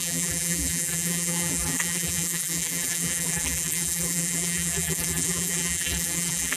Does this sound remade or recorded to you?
remade